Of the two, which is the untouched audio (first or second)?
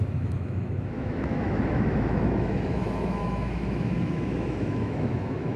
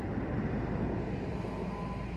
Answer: second